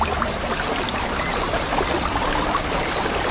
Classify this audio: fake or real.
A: real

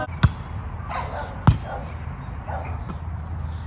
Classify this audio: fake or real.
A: real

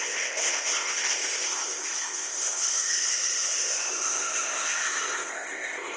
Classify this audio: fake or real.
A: fake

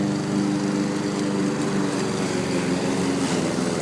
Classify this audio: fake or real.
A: real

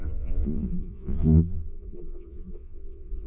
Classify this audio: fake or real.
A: fake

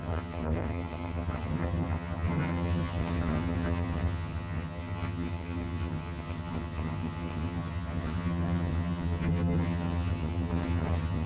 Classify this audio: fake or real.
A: fake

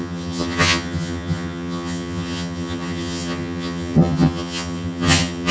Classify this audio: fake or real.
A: fake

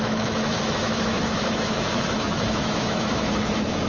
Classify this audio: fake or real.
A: fake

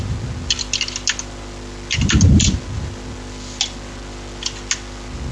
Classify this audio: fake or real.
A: real